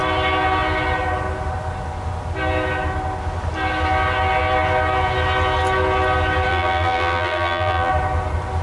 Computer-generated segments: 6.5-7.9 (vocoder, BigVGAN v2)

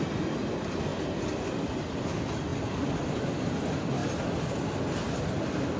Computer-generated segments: none

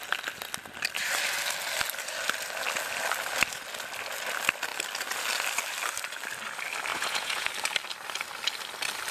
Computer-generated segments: 6.9-7.5 (vocoder, Vocos)

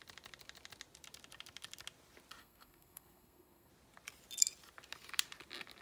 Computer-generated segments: 2.4-3.7 (codec, SNAC)

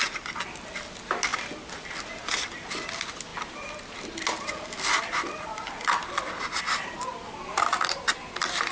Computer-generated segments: none

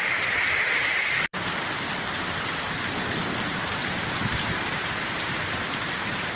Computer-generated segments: 0.0-1.8 (vocoder, BigVGAN v2); 3.8-5.8